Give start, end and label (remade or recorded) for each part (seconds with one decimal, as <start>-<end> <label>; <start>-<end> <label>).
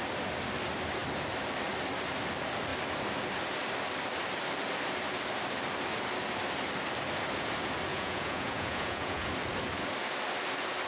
0.0-7.9 recorded; 7.9-9.3 remade; 9.3-10.9 recorded